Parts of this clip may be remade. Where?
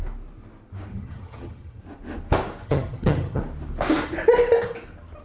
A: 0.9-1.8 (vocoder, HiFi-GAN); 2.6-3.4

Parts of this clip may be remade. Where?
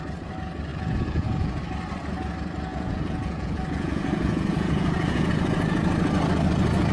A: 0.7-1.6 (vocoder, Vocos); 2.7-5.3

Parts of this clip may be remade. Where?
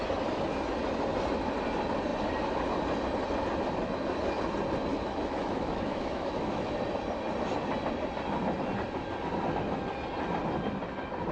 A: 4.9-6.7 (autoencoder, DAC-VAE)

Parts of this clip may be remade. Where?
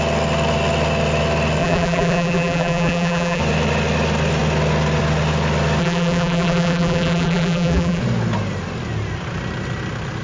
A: 1.6-3.4 (vocoder, BigVGAN v2); 5.8-8.0